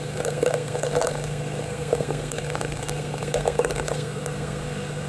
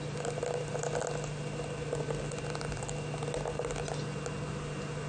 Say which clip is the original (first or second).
second